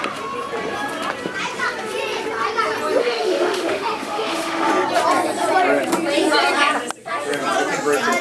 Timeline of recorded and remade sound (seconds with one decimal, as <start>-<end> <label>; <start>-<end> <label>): 0.0-3.0 recorded; 3.0-4.7 remade; 4.7-8.2 recorded